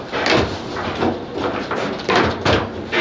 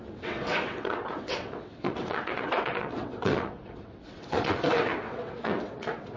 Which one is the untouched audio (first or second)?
first